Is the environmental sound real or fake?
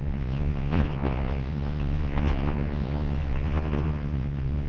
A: fake